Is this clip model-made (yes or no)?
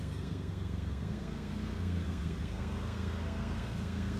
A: yes